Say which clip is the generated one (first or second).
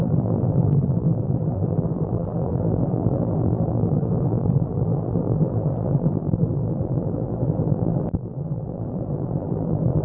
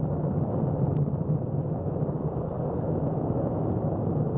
first